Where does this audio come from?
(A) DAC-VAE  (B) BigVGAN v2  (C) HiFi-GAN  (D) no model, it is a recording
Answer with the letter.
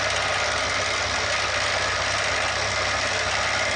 D